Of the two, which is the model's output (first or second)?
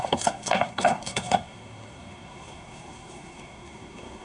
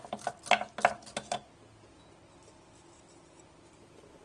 first